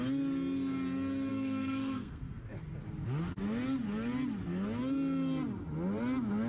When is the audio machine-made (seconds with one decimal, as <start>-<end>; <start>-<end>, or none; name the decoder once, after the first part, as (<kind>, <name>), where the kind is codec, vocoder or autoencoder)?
1.3-2.4 (codec, SNAC)